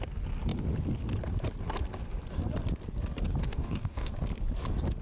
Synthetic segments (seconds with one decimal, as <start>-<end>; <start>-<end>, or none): 3.4-4.1